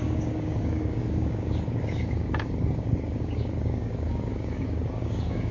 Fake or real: fake